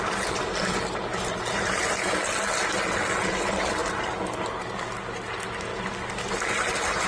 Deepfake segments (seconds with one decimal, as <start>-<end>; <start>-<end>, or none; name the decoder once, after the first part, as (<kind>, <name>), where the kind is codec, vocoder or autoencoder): none